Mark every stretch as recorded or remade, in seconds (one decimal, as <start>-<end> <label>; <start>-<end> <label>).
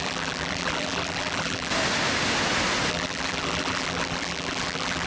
0.0-1.7 remade; 1.7-2.9 recorded; 2.9-5.1 remade